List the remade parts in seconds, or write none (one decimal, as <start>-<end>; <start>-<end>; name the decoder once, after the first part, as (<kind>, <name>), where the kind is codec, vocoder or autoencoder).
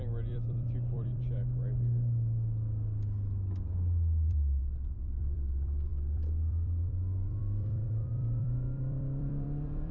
0.0-1.4 (vocoder, BigVGAN v2); 4.3-9.9